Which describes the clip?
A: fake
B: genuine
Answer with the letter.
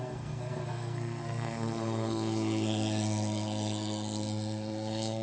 A